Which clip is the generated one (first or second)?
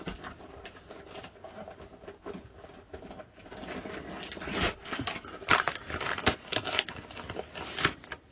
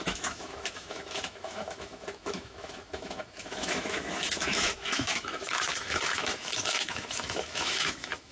second